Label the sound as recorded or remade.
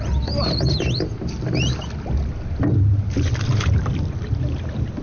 recorded